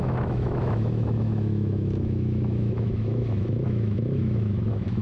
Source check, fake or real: fake